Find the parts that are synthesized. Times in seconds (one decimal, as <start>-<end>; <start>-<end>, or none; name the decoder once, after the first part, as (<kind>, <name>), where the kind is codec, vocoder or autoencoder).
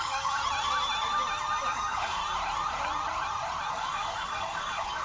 0.0-0.4 (codec, DAC); 1.7-2.2; 3.7-5.0